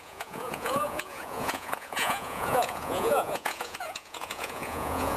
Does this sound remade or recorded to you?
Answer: remade